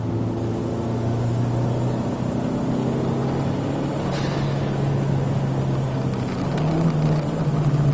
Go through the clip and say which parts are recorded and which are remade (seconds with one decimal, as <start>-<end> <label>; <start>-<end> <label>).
0.0-7.9 recorded